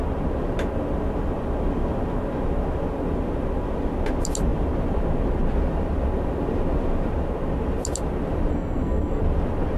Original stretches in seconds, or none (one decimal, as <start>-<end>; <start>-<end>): 0.0-8.5; 9.2-9.8